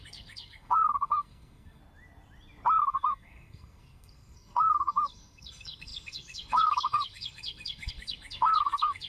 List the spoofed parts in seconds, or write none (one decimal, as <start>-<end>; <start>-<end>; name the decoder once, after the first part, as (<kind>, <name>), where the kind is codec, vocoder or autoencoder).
0.0-1.8 (codec, SNAC); 2.8-9.1